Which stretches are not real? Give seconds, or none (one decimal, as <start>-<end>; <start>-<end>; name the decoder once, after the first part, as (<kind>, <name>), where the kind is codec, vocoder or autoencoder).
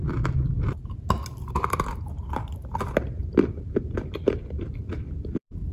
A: 3.2-5.7 (vocoder, BigVGAN v2)